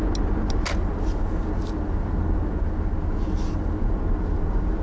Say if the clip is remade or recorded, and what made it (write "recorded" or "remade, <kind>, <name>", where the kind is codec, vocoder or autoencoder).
recorded